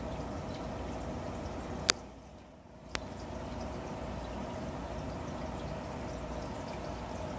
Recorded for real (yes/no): yes